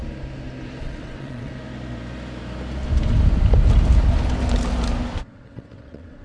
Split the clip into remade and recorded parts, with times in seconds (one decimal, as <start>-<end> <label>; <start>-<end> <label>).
0.0-0.8 recorded; 0.8-1.5 remade; 1.5-5.2 recorded; 5.2-6.2 remade